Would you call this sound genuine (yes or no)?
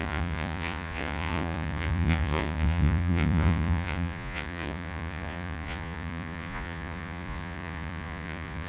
no